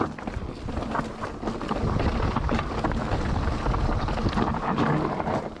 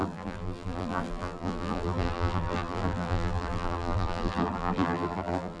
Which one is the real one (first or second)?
first